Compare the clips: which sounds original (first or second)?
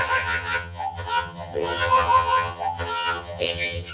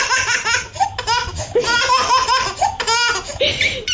second